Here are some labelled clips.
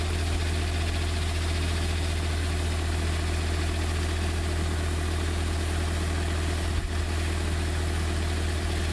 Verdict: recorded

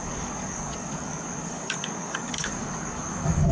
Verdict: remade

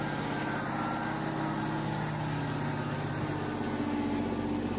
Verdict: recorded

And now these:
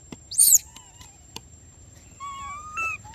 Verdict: remade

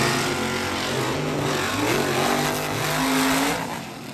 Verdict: recorded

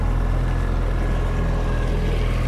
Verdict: recorded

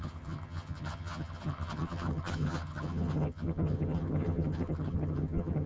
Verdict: remade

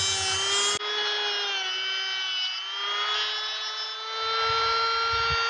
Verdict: recorded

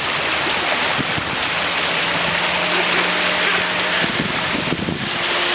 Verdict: recorded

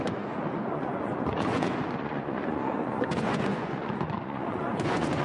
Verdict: remade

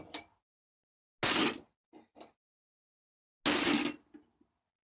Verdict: recorded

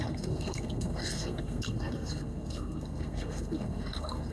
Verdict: remade